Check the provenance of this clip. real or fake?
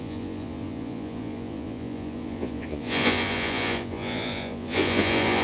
fake